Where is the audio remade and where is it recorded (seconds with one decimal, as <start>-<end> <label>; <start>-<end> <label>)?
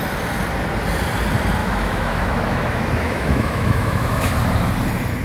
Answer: 0.0-1.6 recorded; 1.6-4.3 remade; 4.3-5.2 recorded